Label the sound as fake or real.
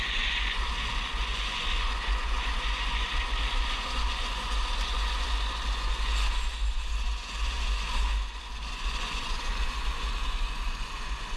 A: fake